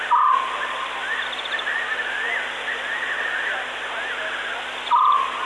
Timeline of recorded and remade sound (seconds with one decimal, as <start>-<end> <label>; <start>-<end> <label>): 0.0-5.5 recorded